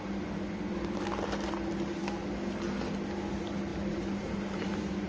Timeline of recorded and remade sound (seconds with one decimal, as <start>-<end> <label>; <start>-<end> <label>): 0.0-3.7 recorded; 3.7-5.1 remade